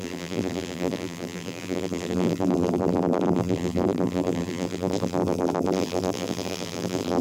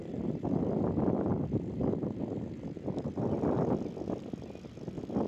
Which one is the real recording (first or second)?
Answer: second